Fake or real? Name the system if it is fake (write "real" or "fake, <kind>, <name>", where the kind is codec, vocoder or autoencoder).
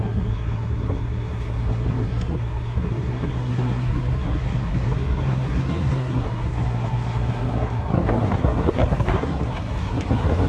fake, codec, SNAC